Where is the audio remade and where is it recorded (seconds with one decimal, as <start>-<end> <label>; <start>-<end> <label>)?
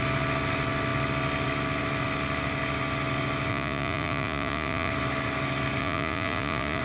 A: 0.0-3.5 recorded; 3.5-4.9 remade; 4.9-5.8 recorded; 5.8-6.8 remade